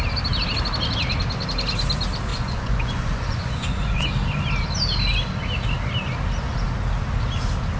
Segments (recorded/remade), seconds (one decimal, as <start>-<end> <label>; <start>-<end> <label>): 0.0-2.3 recorded; 2.3-4.1 remade; 4.1-7.8 recorded